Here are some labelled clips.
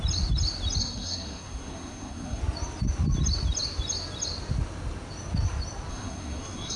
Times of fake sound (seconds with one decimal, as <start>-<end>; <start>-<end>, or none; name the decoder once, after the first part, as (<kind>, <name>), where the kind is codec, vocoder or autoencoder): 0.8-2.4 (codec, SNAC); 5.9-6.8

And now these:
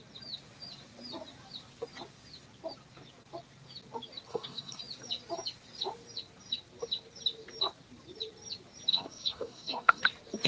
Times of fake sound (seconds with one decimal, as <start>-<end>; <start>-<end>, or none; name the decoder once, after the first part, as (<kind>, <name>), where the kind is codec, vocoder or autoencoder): 4.3-4.8 (codec, SNAC); 8.9-10.0

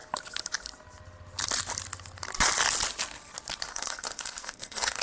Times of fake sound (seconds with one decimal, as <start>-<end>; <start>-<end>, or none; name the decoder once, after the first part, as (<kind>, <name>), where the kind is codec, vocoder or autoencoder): 3.7-5.0 (codec, SNAC)